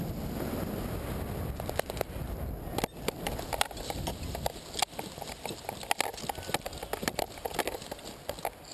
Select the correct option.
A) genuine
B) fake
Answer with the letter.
A